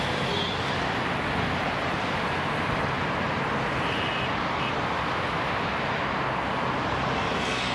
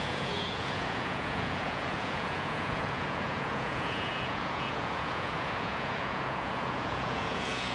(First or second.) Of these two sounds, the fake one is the second